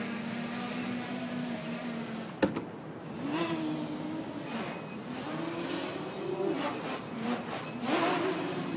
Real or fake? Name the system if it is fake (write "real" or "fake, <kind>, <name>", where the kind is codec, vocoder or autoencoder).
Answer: real